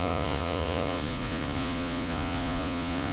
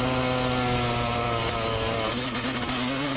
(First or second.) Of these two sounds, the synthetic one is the first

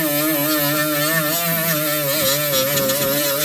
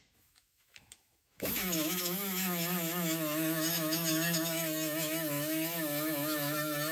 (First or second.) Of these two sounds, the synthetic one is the second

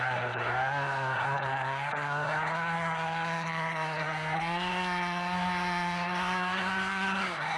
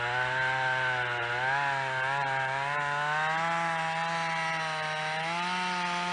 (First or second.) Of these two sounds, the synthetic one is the first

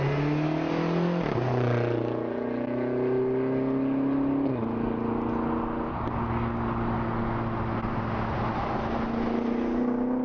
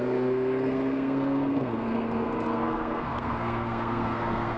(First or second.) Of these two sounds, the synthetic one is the second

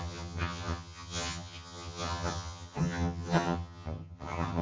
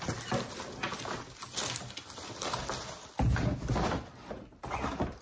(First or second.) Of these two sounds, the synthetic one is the first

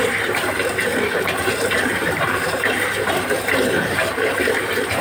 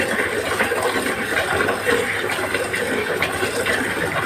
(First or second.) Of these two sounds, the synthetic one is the first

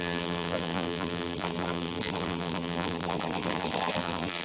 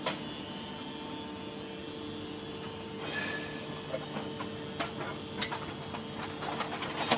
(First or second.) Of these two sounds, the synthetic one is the first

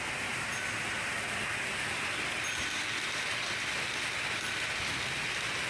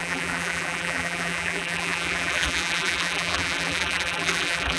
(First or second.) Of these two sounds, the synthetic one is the second